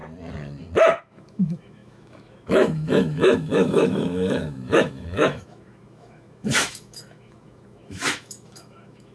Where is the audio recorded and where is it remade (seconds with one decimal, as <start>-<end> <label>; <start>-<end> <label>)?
0.0-1.0 recorded; 1.0-9.1 remade